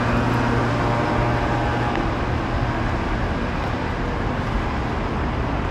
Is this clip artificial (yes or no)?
no